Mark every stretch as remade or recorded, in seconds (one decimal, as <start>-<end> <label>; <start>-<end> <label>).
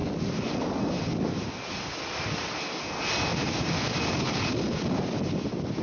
0.0-3.3 recorded; 3.3-5.8 remade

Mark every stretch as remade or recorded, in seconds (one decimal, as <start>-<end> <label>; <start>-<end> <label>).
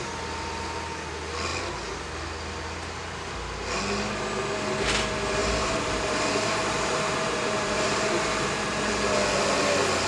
0.0-5.4 recorded; 5.4-8.9 remade; 8.9-10.1 recorded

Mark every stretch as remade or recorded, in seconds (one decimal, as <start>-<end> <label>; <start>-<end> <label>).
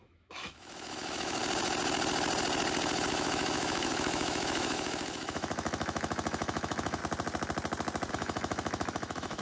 0.0-1.4 remade; 1.4-3.1 recorded; 3.1-7.0 remade; 7.0-8.1 recorded; 8.1-9.4 remade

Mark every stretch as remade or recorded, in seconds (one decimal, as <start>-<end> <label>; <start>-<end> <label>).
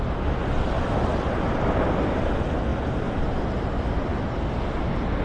0.0-2.7 recorded; 2.7-3.4 remade; 3.4-5.2 recorded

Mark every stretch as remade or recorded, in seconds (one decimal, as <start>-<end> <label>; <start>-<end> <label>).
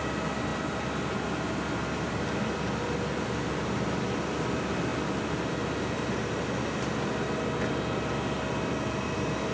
0.0-9.5 recorded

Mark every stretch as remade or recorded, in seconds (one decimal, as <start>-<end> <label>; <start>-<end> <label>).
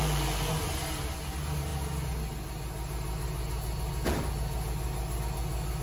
0.0-5.8 recorded